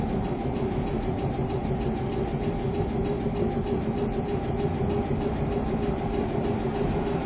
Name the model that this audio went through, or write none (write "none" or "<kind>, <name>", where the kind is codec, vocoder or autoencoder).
none